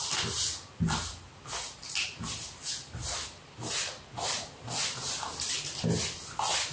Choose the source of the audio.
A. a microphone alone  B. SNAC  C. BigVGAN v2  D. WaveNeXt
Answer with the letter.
A